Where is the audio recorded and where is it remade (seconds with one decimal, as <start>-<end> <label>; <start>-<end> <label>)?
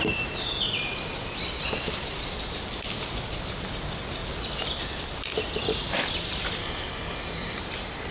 0.0-6.6 recorded; 6.6-7.6 remade; 7.6-8.1 recorded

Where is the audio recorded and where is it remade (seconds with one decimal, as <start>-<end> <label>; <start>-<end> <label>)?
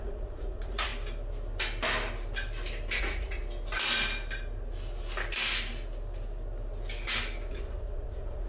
0.0-0.9 remade; 0.9-3.0 recorded; 3.0-3.4 remade; 3.4-7.5 recorded; 7.5-8.5 remade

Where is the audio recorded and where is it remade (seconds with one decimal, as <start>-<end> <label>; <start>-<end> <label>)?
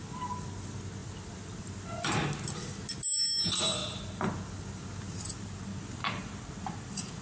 0.0-3.8 recorded; 3.8-4.3 remade; 4.3-5.7 recorded; 5.7-7.2 remade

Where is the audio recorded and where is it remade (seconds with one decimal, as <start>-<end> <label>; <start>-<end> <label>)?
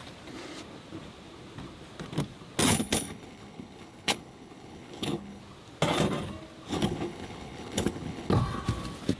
0.0-2.7 recorded; 2.7-5.4 remade; 5.4-6.7 recorded; 6.7-8.3 remade; 8.3-9.2 recorded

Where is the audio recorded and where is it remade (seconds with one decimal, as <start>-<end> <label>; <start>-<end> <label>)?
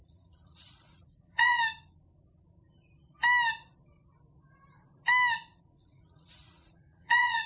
0.0-1.6 remade; 1.6-5.5 recorded; 5.5-7.5 remade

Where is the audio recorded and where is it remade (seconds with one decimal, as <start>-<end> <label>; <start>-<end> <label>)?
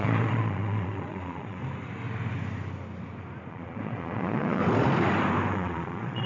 0.0-1.6 remade; 1.6-3.5 recorded; 3.5-4.6 remade; 4.6-5.5 recorded; 5.5-6.3 remade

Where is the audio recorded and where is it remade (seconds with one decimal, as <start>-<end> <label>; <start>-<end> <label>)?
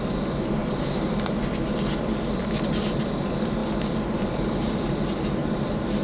0.0-6.0 recorded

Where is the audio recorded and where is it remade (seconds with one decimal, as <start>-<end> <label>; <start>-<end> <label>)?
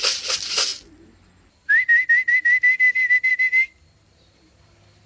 0.0-5.1 recorded